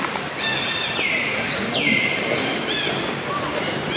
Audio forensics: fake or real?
real